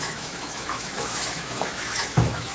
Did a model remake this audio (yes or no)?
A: yes